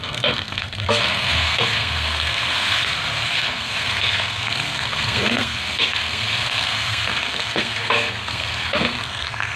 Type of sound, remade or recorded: remade